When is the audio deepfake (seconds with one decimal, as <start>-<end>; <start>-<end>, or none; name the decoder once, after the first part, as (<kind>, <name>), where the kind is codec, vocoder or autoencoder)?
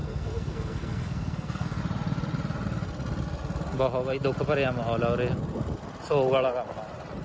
0.0-1.8 (codec, SNAC)